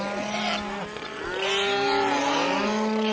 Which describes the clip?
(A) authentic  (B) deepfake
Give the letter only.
A